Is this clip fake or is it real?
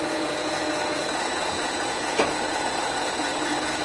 fake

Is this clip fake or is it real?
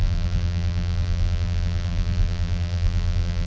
fake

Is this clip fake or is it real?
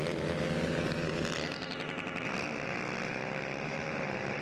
real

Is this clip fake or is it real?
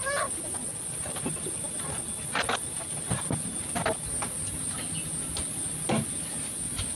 real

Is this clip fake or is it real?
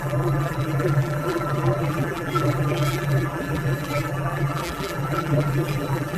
fake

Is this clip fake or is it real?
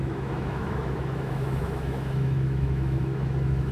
fake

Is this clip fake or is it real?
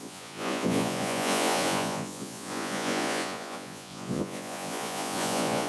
fake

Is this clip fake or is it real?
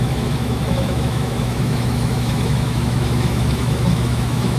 fake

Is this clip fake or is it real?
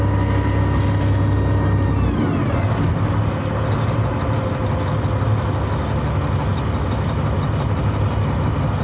real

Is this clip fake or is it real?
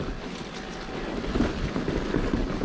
real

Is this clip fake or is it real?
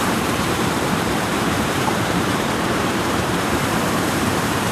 fake